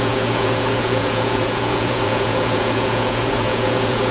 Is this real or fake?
fake